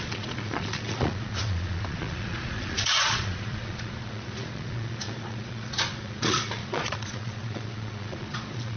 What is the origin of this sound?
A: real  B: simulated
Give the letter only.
B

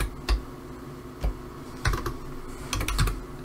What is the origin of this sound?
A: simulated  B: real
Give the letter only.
B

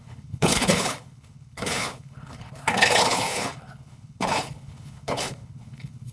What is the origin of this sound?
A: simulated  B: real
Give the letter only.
A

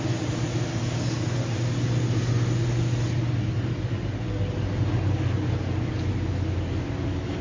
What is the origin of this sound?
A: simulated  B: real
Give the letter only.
B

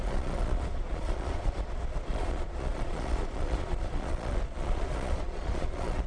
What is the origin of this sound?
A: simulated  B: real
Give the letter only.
A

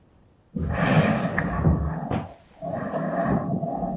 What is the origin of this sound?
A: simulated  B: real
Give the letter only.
B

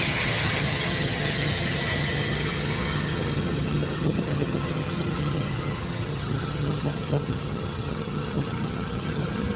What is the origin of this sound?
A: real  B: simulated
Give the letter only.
B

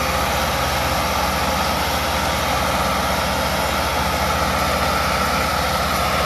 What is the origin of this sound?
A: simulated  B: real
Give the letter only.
B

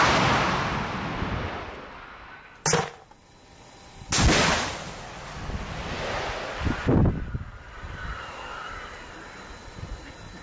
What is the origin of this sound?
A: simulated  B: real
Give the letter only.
B